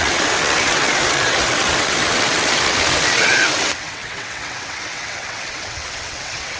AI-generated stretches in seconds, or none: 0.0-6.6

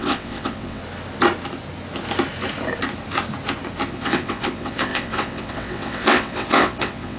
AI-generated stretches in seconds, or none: 0.0-0.8; 3.9-7.2

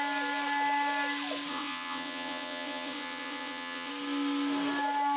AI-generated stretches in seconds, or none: 1.5-3.9

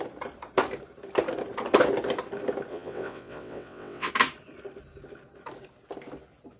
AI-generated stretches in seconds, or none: 2.7-4.1

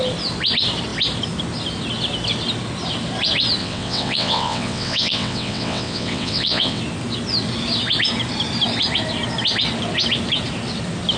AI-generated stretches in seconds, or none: 3.6-6.8